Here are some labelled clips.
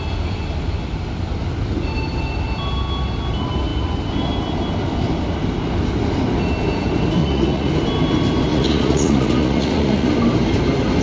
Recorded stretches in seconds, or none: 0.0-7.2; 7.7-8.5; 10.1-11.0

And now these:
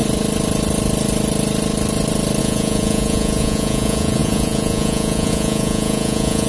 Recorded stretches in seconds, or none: 0.0-2.4

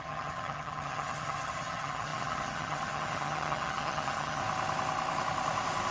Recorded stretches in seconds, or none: 4.4-5.9

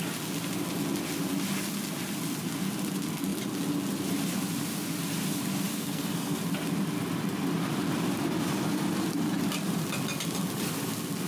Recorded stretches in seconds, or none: 0.0-5.7; 6.4-11.3

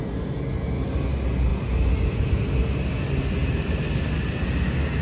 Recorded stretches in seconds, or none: 0.0-5.0

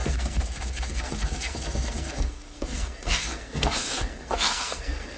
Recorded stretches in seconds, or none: none

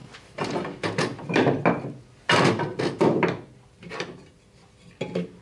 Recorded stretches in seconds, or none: 0.0-5.4